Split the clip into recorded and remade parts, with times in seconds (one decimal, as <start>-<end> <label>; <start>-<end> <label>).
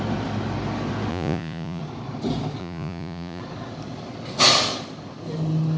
0.0-1.1 recorded; 1.1-1.8 remade; 1.8-2.6 recorded; 2.6-3.4 remade; 3.4-5.8 recorded